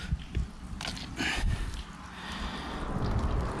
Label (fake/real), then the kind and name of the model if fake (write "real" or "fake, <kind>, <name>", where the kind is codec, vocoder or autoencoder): real